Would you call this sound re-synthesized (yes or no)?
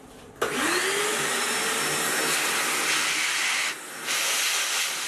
no